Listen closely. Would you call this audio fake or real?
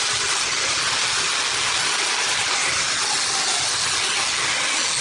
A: real